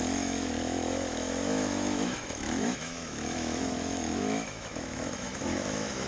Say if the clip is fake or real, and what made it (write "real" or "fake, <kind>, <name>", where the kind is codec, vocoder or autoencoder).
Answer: fake, autoencoder, DAC-VAE